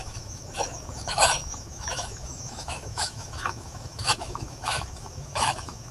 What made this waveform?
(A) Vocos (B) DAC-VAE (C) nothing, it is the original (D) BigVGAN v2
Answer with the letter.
B